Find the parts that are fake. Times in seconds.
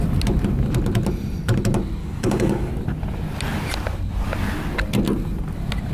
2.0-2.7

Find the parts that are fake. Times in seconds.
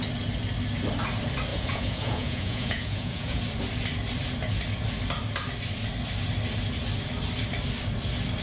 1.5-3.4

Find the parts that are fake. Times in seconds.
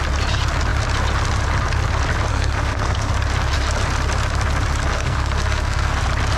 2.3-3.1; 4.9-6.0